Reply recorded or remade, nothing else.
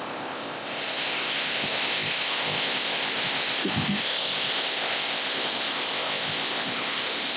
remade